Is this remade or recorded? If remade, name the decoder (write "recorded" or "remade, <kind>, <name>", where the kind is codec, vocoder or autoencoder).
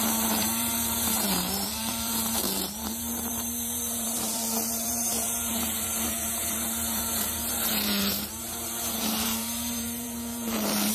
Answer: remade, vocoder, BigVGAN v2